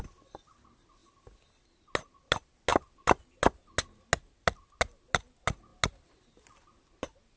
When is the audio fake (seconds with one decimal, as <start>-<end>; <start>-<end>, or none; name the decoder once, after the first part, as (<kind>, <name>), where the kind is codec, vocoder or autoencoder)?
none